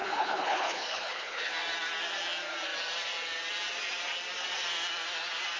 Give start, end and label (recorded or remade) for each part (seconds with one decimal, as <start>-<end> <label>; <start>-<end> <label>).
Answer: 0.0-1.5 remade; 1.5-5.6 recorded